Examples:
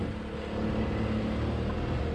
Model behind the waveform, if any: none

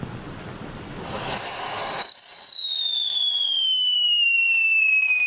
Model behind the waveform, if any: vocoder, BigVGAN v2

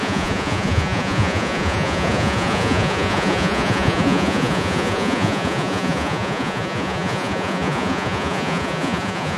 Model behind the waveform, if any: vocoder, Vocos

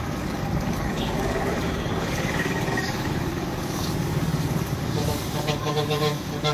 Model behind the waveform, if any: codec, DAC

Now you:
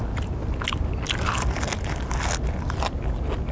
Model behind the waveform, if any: none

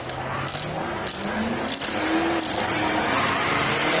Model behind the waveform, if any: none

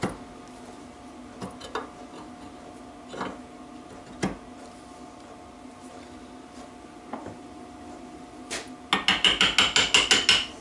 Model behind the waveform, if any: none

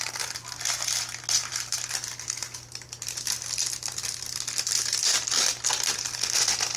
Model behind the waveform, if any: none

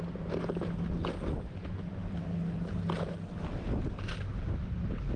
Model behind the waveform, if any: none